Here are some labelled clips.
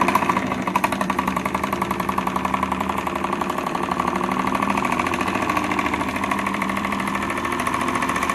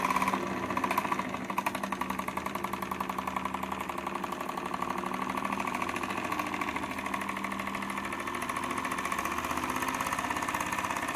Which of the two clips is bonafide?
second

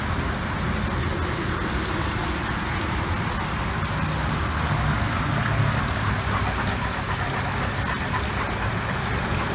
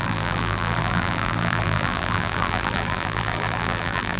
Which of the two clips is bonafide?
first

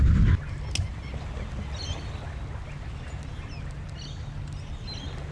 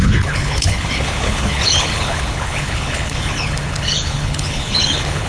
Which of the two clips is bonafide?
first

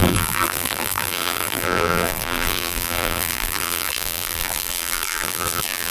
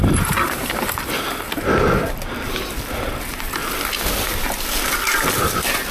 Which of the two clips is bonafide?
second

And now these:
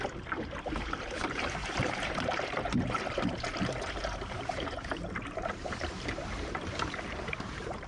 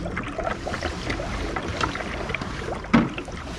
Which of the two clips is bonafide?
second